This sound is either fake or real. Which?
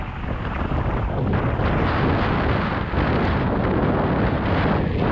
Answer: real